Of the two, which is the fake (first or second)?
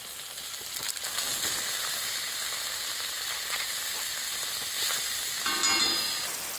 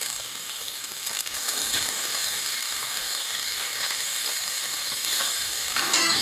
second